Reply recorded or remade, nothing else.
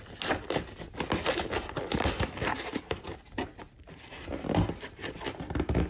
recorded